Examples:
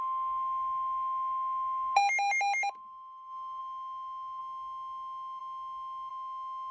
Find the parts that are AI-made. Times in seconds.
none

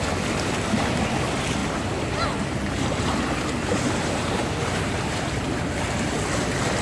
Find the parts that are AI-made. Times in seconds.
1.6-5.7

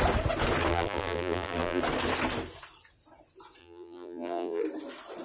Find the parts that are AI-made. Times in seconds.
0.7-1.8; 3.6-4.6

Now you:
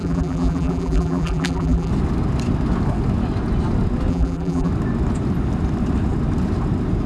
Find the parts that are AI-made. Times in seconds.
0.0-1.9; 4.1-4.7

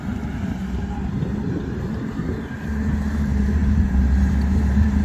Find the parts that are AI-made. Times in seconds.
0.0-5.0

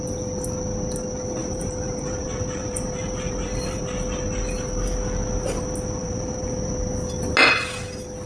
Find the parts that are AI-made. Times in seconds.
1.4-3.8; 6.0-6.7

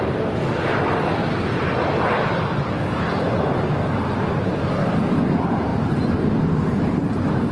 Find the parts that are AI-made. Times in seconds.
0.0-0.7; 4.3-5.7; 7.1-7.5

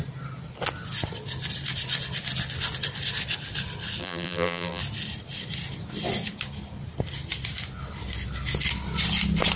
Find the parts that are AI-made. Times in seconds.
4.0-4.8